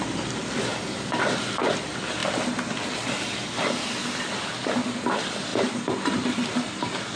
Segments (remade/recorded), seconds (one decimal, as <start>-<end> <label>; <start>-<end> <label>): 0.0-0.7 recorded; 0.7-1.4 remade; 1.4-5.5 recorded; 5.5-7.2 remade